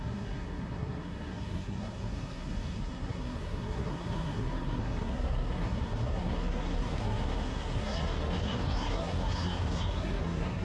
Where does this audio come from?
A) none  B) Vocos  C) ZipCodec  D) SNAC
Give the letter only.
D